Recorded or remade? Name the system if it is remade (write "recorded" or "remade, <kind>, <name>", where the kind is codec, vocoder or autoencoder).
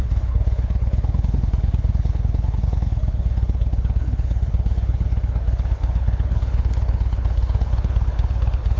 remade, codec, HILCodec